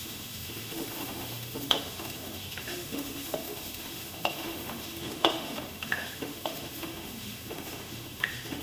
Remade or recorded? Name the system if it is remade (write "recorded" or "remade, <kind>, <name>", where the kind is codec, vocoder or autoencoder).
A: remade, autoencoder, DAC-VAE